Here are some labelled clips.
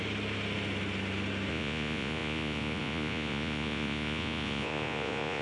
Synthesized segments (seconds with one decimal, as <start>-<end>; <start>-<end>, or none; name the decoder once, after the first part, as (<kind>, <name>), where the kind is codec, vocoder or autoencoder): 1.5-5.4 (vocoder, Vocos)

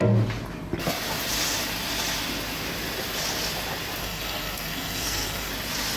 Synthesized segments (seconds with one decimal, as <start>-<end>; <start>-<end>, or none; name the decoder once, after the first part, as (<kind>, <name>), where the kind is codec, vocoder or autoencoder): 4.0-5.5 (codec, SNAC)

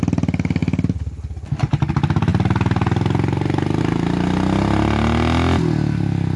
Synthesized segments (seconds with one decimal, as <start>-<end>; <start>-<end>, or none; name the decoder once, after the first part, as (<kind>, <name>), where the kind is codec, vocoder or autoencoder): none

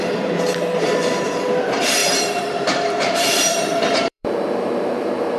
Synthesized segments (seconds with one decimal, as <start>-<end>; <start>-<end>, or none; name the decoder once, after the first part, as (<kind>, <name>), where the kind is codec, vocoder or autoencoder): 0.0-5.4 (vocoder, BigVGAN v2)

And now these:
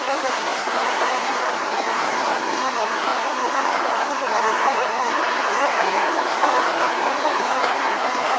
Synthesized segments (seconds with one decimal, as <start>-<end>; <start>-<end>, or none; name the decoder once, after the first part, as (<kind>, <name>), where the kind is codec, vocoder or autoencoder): 0.0-8.4 (codec, SNAC)